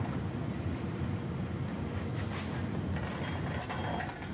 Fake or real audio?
real